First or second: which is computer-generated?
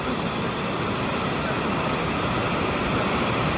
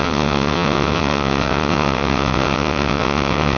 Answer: second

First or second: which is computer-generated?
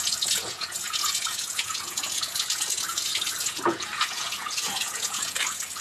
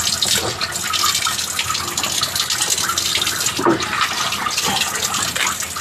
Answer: first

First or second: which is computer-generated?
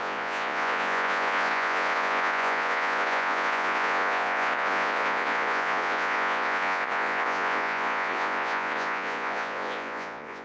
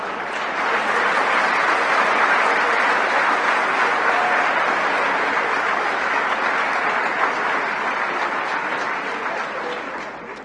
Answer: first